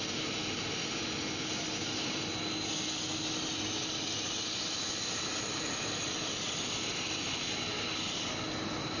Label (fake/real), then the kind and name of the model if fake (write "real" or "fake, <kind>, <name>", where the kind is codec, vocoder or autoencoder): real